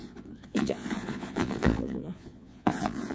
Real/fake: fake